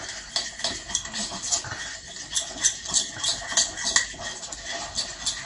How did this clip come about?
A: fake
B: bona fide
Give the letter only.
B